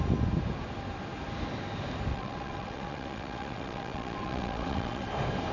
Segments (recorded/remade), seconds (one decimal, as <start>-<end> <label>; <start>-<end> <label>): 0.0-2.1 recorded; 2.1-5.1 remade; 5.1-5.5 recorded